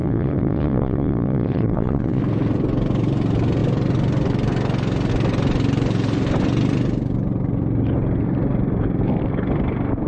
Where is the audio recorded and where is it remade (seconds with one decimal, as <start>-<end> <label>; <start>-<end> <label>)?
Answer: 0.0-2.2 remade; 2.2-10.1 recorded